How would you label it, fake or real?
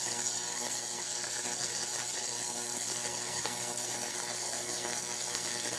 fake